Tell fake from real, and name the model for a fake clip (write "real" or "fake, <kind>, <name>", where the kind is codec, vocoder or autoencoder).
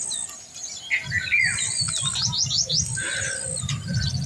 real